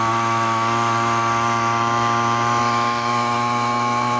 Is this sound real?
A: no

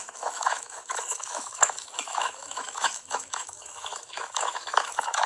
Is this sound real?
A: no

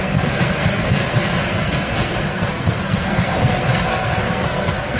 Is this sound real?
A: no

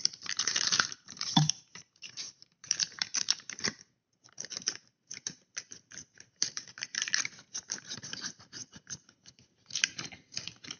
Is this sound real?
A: no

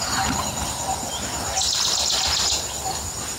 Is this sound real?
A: yes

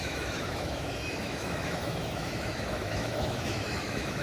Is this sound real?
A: no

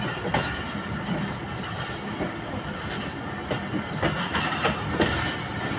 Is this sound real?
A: yes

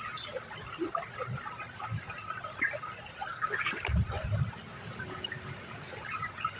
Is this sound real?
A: yes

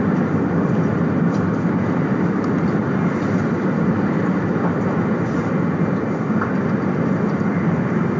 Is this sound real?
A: no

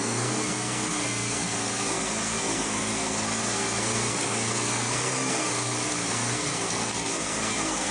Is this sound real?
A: no